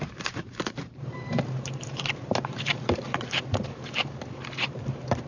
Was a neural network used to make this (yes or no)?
yes